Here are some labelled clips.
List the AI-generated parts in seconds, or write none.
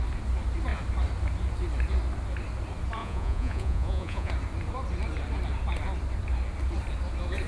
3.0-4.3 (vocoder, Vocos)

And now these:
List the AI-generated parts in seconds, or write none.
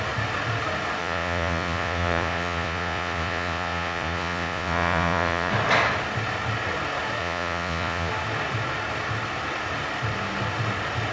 1.0-5.5 (vocoder, Vocos); 7.2-8.1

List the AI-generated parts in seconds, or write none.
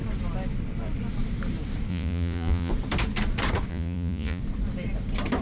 1.9-2.7 (vocoder, Vocos); 3.7-4.4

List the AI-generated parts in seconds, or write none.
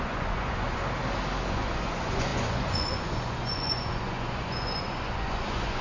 0.0-0.8 (vocoder, Vocos); 1.5-5.8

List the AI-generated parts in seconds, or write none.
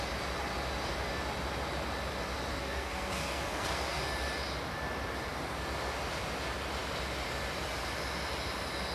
2.5-4.0 (codec, SNAC)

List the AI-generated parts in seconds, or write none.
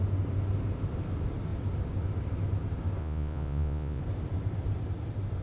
3.0-4.0 (vocoder, Vocos)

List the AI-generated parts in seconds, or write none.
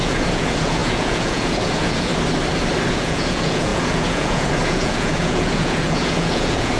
0.0-2.1 (vocoder, Vocos); 2.9-6.8